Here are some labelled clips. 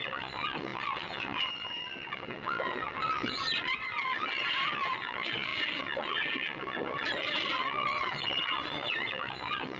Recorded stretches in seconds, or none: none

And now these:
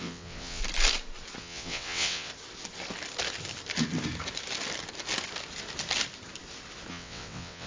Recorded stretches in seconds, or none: 0.6-1.4; 2.3-6.9

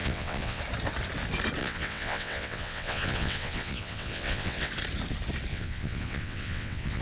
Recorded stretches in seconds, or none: 0.6-1.6; 4.7-5.5

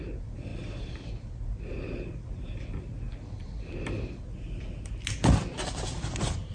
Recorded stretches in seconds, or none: 0.0-6.5

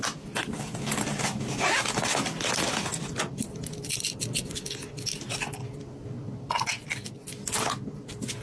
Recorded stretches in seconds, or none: 0.0-8.4

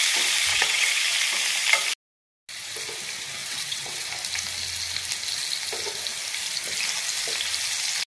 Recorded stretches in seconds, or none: 0.0-0.5; 1.0-3.4; 4.1-8.1

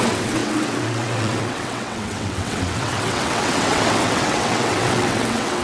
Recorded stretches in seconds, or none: none

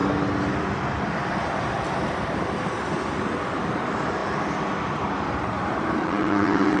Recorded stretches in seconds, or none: 0.0-6.0